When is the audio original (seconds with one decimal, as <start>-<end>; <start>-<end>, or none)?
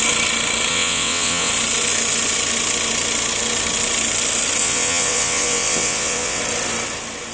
0.0-0.7; 1.5-4.6; 6.4-7.3